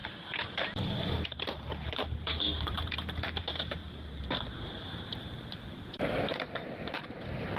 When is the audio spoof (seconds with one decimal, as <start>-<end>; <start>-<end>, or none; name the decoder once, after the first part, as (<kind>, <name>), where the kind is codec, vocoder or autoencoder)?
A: 0.0-3.8 (vocoder, BigVGAN v2); 4.7-7.6